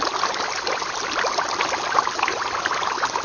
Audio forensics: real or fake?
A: real